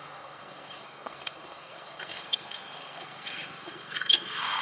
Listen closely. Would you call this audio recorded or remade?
remade